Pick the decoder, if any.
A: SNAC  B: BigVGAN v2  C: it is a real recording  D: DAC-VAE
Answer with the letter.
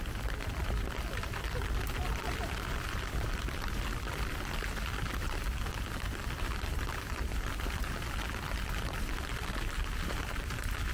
B